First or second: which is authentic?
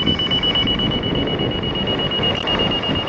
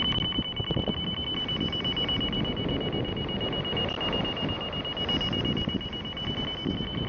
second